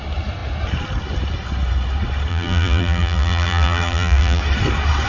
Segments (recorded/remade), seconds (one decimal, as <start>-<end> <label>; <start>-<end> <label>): 0.0-2.3 recorded; 2.3-4.4 remade; 4.4-5.1 recorded

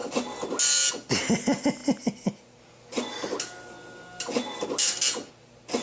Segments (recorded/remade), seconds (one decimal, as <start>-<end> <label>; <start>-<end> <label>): 0.0-5.8 recorded

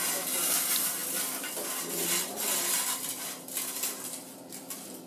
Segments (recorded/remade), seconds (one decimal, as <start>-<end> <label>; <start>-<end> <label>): 0.0-5.1 recorded

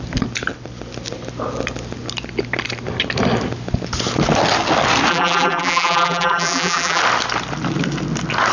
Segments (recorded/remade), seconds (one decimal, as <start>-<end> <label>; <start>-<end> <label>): 0.0-5.1 recorded; 5.1-7.0 remade; 7.0-8.5 recorded

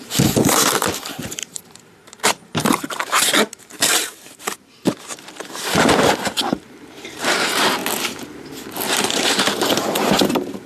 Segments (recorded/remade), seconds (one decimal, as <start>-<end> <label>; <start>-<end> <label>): 0.0-7.8 remade; 7.8-8.9 recorded; 8.9-10.7 remade